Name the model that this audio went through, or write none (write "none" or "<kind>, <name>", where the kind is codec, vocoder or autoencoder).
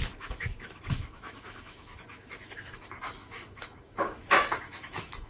autoencoder, DAC-VAE